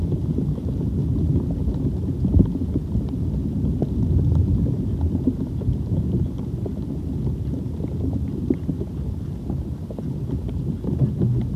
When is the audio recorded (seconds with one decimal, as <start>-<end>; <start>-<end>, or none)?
0.0-11.6